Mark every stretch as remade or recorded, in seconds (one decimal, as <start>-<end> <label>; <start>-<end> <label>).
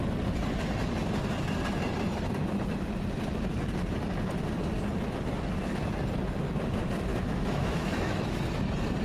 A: 0.0-7.1 recorded; 7.1-8.4 remade; 8.4-9.0 recorded